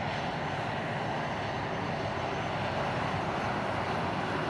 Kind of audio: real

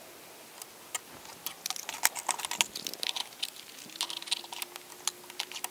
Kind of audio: real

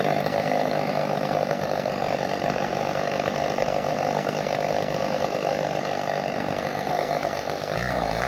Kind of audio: fake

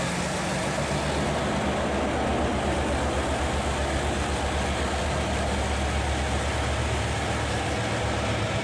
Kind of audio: real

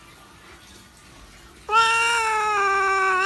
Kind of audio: real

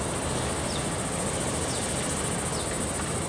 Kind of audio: real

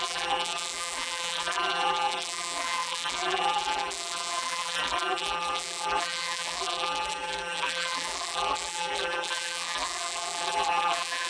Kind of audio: fake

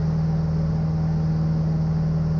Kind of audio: real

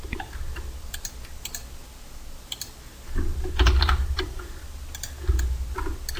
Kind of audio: real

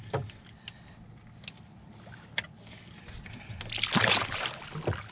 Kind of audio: real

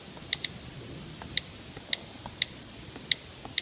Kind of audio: real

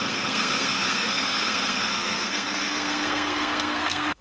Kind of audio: fake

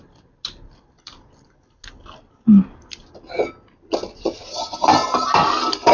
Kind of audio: real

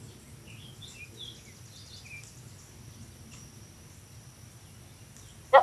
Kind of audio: real